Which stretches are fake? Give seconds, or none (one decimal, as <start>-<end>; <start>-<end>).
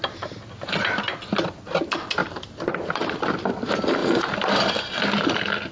2.2-3.5; 4.0-4.7